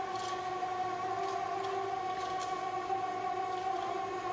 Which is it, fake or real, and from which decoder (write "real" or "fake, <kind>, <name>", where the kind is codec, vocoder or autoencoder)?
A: real